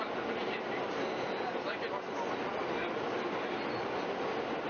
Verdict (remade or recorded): recorded